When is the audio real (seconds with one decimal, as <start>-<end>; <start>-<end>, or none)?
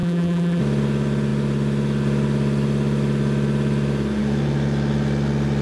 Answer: 0.6-5.6